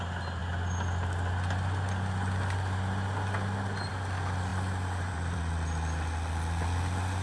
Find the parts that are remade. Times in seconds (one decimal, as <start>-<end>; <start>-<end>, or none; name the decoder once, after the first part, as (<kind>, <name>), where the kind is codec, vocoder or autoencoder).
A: 4.5-5.4 (vocoder, BigVGAN v2)